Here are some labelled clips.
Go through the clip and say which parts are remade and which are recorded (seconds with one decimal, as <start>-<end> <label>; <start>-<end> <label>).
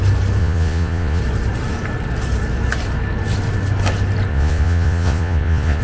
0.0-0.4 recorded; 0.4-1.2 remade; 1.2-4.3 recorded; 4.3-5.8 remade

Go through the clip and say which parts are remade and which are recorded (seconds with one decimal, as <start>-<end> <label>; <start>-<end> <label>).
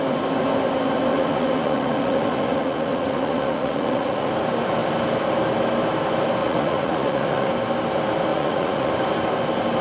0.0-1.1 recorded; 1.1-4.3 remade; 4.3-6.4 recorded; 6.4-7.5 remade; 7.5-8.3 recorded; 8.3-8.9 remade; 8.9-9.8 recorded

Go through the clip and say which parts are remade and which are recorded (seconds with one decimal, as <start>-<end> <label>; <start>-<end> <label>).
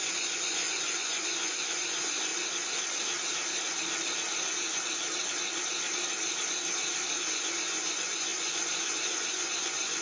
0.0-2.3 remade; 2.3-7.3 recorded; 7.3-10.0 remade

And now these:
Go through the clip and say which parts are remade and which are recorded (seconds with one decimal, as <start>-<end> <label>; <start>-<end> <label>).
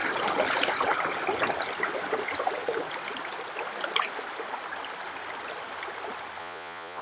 0.0-6.4 recorded; 6.4-7.0 remade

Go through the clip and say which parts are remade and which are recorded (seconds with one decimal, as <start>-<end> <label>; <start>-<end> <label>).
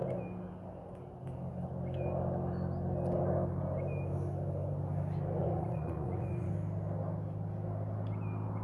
0.0-5.4 recorded; 5.4-6.5 remade; 6.5-8.6 recorded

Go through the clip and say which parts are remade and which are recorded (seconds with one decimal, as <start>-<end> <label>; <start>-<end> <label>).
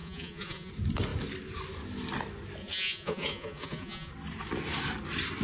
0.0-0.7 remade; 0.7-2.6 recorded; 2.6-4.1 remade; 4.1-5.4 recorded